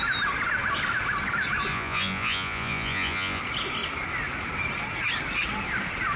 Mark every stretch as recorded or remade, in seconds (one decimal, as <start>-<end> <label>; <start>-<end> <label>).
0.0-1.7 recorded; 1.7-3.4 remade; 3.4-6.2 recorded